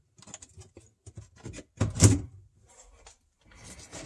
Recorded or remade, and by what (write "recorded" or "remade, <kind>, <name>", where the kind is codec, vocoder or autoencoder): recorded